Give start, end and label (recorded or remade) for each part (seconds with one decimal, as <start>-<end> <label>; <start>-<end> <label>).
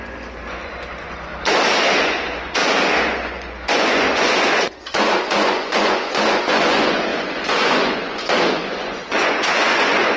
0.0-1.3 remade; 1.3-2.0 recorded; 2.0-10.2 remade